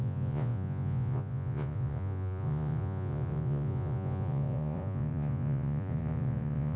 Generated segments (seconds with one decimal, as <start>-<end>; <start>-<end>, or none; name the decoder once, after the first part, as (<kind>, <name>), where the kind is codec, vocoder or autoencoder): 0.0-6.8 (vocoder, Vocos)